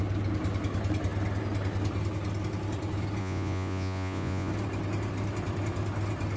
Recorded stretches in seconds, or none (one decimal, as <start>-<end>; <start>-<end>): 0.0-3.2; 4.5-6.4